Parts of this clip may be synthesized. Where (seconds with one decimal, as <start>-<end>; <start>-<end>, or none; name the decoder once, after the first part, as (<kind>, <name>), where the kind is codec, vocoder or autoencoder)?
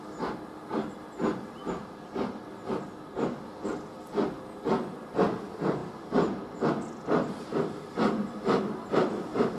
none